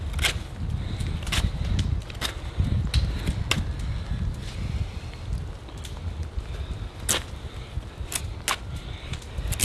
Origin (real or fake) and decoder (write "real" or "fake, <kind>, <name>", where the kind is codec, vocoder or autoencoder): real